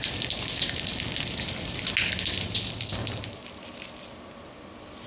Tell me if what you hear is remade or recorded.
recorded